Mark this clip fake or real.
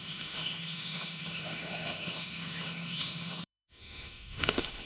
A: fake